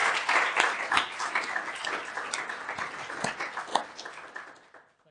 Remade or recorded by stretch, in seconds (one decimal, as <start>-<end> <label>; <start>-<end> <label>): 0.0-5.1 recorded